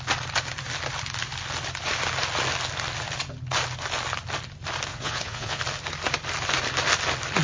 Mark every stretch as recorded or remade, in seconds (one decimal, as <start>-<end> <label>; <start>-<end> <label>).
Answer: 0.0-4.9 recorded; 4.9-5.6 remade; 5.6-7.4 recorded